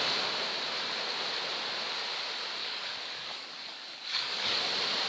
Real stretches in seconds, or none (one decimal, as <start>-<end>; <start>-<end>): 0.0-2.6; 4.6-5.1